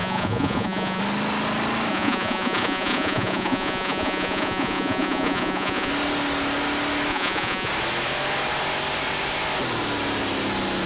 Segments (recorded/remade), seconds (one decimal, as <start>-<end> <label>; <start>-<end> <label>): 0.0-1.0 remade; 1.0-1.9 recorded; 1.9-5.9 remade; 5.9-7.1 recorded; 7.1-7.7 remade; 7.7-10.9 recorded